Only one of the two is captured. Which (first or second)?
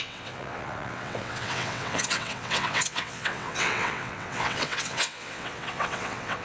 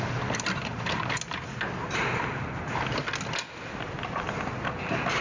second